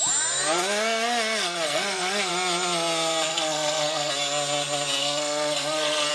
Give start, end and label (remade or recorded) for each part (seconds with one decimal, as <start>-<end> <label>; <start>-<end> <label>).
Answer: 0.0-1.4 recorded; 1.4-2.3 remade; 2.3-3.3 recorded; 3.3-4.1 remade; 4.1-5.0 recorded; 5.0-6.1 remade